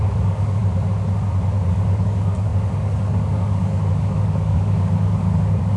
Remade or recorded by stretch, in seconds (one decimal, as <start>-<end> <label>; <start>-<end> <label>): 0.0-0.6 remade; 0.6-1.7 recorded; 1.7-5.8 remade